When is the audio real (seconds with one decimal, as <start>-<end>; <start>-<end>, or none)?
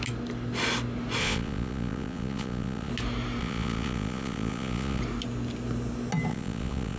0.0-1.2; 2.9-3.4; 5.0-6.3